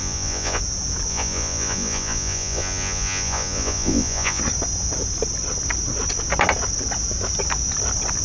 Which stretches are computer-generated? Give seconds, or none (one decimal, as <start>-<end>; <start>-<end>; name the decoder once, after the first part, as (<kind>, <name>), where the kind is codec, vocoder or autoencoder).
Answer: 0.0-0.6 (vocoder, Vocos); 1.1-4.4